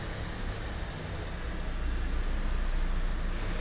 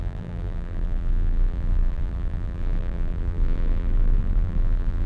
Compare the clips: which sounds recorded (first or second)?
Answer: first